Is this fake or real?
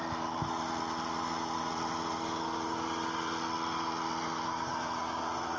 real